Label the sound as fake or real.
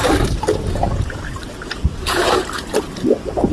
real